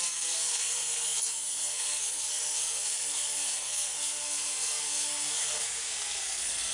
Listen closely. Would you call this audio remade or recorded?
remade